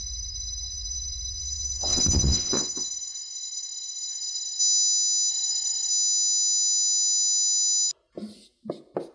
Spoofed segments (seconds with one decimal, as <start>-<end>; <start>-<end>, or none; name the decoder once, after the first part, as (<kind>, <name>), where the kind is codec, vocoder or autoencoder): 0.0-4.6 (vocoder, WaveNeXt); 5.3-5.9